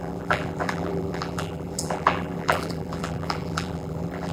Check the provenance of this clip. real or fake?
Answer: fake